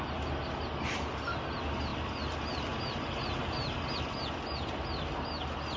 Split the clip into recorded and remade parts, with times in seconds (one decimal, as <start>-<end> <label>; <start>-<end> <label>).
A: 0.0-5.8 recorded